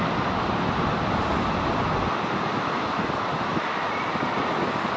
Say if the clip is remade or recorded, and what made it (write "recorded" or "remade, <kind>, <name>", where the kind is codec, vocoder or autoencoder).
recorded